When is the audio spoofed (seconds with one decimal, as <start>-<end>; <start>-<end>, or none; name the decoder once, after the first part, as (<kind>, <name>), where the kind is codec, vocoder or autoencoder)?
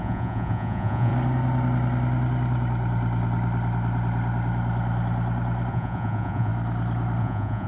0.0-1.1 (vocoder, Vocos); 5.7-6.5; 7.2-7.7